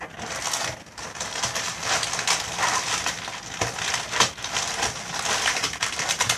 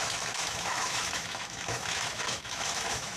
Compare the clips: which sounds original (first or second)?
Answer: first